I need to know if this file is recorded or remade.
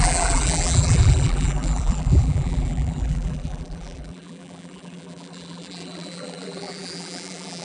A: remade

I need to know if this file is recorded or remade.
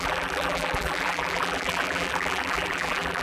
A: remade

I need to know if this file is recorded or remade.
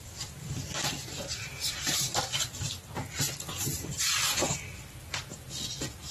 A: remade